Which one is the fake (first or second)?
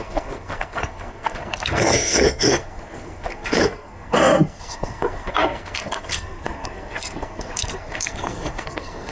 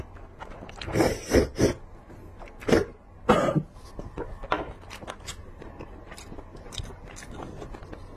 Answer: first